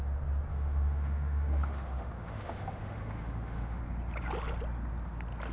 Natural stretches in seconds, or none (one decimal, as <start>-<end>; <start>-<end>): 0.0-0.5; 3.8-5.5